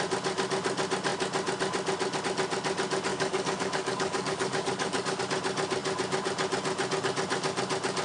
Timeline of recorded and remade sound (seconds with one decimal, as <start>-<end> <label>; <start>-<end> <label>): 0.0-3.1 recorded; 3.1-5.2 remade; 5.2-8.0 recorded